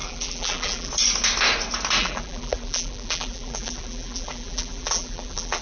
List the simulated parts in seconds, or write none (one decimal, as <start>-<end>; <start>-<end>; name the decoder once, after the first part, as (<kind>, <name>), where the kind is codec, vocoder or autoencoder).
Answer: 0.0-0.9 (vocoder, BigVGAN v2); 2.0-5.6